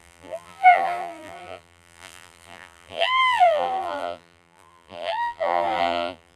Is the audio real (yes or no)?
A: no